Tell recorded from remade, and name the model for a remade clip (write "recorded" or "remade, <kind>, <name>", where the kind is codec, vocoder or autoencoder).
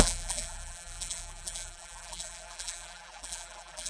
remade, vocoder, BigVGAN v2